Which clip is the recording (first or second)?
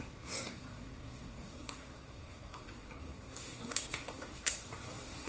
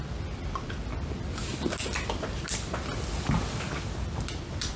second